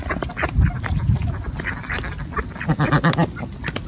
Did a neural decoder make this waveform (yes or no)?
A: no